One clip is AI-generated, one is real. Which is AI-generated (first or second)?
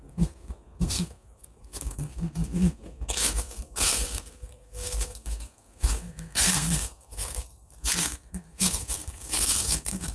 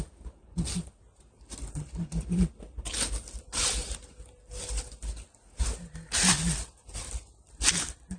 first